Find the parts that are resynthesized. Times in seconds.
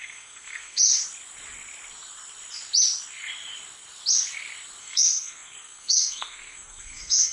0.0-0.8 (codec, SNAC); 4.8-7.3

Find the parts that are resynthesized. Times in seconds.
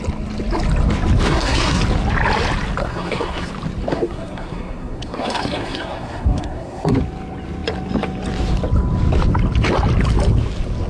1.3-1.8 (codec, SNAC); 2.8-3.5; 3.9-7.0